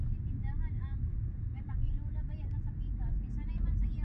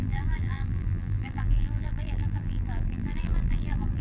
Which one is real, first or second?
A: first